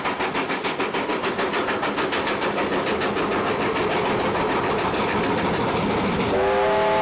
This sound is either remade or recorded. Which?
recorded